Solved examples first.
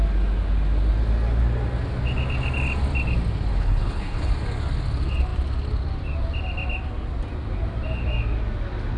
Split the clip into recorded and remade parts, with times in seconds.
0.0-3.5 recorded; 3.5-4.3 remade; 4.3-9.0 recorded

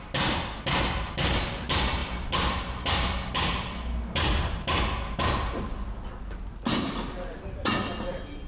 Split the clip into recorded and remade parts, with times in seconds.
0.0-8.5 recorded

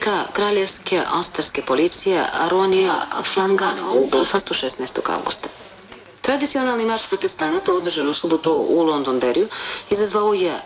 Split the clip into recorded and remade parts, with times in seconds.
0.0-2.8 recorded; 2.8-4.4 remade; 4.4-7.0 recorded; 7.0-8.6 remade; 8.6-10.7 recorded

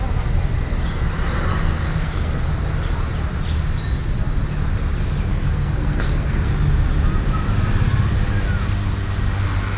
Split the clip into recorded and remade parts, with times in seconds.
0.0-1.5 recorded; 1.5-2.5 remade; 2.5-5.3 recorded; 5.3-6.5 remade; 6.5-9.8 recorded

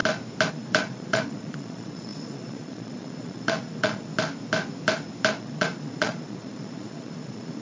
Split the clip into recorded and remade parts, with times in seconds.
0.0-0.5 recorded; 0.5-4.1 remade; 4.1-5.4 recorded; 5.4-7.6 remade

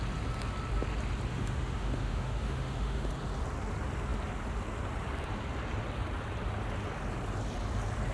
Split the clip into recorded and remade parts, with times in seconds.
0.0-1.3 recorded; 1.3-3.1 remade; 3.1-8.1 recorded

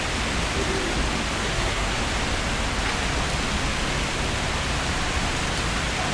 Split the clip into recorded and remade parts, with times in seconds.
0.0-1.4 recorded; 1.4-2.0 remade; 2.0-6.1 recorded